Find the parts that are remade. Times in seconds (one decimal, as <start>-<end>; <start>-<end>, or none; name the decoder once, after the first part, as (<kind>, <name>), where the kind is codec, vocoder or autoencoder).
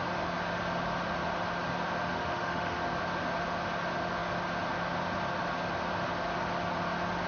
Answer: 2.1-2.8 (autoencoder, DAC-VAE)